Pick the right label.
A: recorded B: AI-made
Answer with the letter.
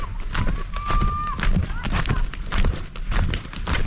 A